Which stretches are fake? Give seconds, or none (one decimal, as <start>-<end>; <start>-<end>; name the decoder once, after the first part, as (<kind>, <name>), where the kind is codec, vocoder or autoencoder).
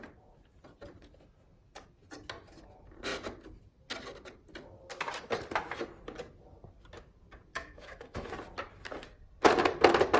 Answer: 7.5-8.3 (autoencoder, DAC-VAE)